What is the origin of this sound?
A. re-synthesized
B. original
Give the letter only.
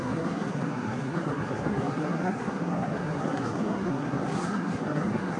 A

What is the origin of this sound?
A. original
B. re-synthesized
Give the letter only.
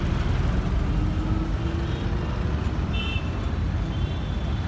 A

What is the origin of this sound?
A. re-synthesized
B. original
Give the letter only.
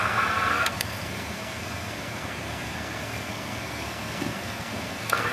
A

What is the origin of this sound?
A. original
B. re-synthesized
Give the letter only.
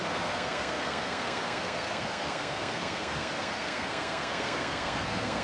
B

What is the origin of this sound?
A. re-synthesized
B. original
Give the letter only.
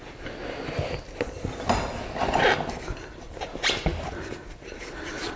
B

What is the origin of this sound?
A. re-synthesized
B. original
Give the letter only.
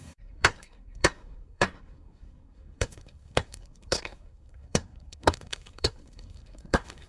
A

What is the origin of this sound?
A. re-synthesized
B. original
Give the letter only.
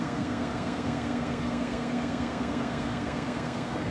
A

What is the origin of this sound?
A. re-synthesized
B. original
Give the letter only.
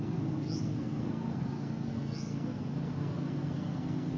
A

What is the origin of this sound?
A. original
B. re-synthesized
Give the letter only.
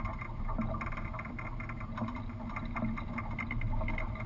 A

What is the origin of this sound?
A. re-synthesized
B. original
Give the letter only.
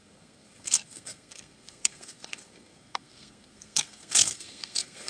A